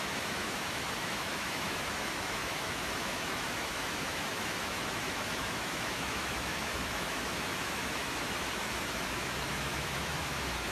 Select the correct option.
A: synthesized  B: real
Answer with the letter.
A